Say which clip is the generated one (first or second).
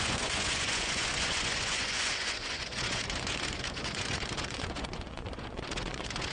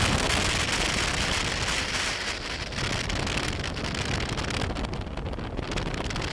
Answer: first